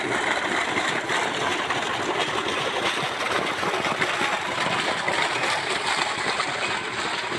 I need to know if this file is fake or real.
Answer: real